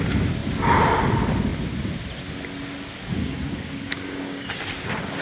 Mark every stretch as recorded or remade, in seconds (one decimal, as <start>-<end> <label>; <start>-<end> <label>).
0.0-3.2 recorded; 3.2-4.6 remade; 4.6-5.2 recorded